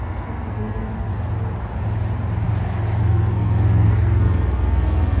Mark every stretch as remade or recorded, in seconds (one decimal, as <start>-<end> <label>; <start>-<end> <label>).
0.0-1.1 remade; 1.1-3.0 recorded; 3.0-5.2 remade